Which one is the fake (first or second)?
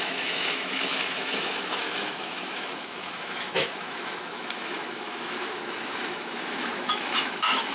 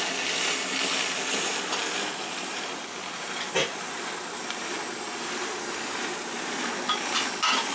first